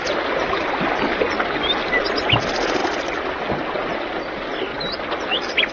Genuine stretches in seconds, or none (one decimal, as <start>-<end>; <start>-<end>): 0.0-2.8; 3.8-5.7